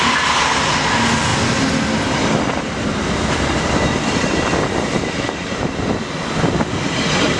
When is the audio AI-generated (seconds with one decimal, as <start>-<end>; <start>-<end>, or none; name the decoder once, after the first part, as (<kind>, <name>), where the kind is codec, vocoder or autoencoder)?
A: none